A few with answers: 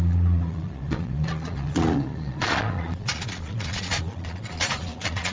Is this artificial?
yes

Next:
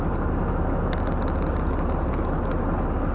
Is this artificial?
no